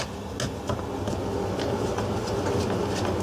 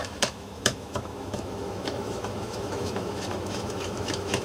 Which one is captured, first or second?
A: first